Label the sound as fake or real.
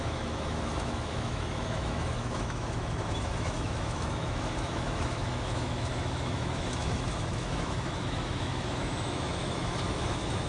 fake